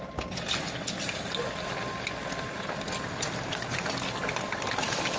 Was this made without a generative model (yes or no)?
yes